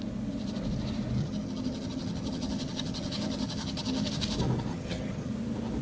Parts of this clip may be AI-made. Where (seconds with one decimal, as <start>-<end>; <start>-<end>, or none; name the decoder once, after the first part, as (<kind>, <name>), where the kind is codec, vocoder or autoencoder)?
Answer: 1.2-4.1 (vocoder, HiFi-GAN); 4.7-5.3